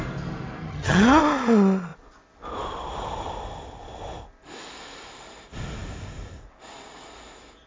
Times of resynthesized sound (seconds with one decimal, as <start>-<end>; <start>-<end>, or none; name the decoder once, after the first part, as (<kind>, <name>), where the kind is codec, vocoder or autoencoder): 0.6-1.2 (vocoder, HiFi-GAN)